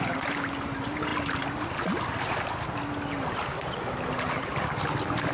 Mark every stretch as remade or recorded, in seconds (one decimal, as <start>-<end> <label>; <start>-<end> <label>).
0.0-5.3 recorded